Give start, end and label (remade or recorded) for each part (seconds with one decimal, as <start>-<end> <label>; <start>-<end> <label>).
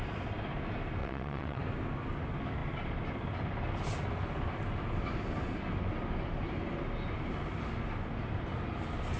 0.0-1.0 recorded; 1.0-1.6 remade; 1.6-9.2 recorded